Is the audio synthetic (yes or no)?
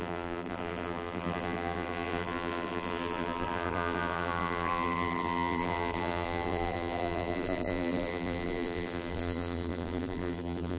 yes